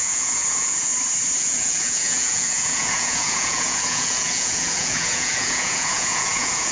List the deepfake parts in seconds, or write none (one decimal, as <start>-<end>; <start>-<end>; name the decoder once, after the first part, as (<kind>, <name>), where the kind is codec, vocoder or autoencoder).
0.0-0.9 (vocoder, Vocos); 1.4-6.7